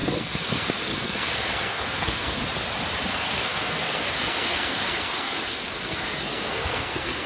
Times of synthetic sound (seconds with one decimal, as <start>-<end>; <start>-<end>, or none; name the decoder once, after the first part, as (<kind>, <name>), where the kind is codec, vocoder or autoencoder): 0.0-2.4 (codec, SNAC); 3.1-7.3